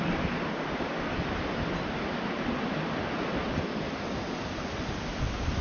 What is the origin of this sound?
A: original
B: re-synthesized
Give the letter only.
B